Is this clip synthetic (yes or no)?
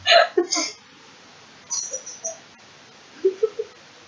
no